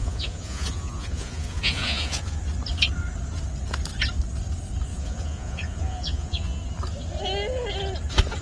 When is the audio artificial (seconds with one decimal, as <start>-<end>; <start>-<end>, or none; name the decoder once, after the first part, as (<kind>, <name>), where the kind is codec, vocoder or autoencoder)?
0.0-2.4 (vocoder, Vocos); 4.9-6.6